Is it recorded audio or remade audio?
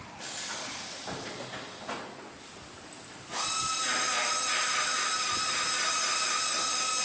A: recorded